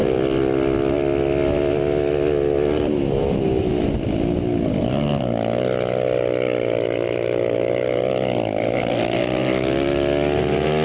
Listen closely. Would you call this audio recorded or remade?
recorded